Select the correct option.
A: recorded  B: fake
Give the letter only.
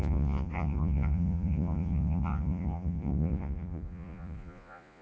B